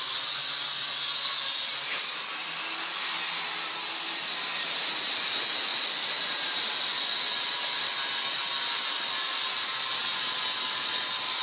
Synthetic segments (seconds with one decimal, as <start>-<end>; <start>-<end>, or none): none